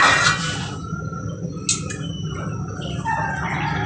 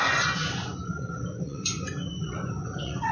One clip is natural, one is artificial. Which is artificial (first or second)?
second